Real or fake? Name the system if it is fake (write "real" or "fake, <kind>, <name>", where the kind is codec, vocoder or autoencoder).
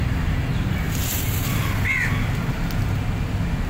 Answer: real